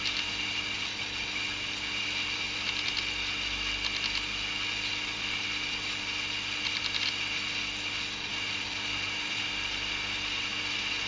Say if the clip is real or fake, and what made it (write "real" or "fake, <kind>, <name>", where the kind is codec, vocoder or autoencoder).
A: real